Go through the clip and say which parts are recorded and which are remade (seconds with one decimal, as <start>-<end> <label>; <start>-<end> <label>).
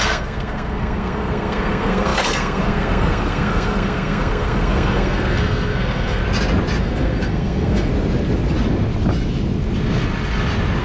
0.0-6.2 remade; 6.2-6.8 recorded; 6.8-7.9 remade; 7.9-10.8 recorded